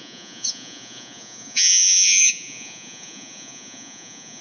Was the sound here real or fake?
fake